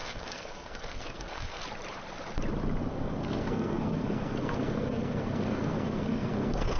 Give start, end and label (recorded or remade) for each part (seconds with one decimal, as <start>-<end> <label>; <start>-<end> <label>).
0.0-1.6 remade; 1.6-2.9 recorded; 2.9-6.8 remade